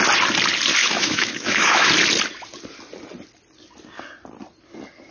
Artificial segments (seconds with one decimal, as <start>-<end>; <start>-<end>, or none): 0.8-1.9